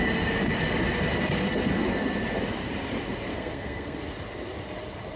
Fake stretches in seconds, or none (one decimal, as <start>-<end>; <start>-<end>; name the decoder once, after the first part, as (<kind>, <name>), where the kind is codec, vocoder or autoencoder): 3.3-4.0 (codec, SNAC)